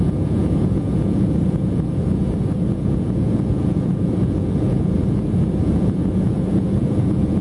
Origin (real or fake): fake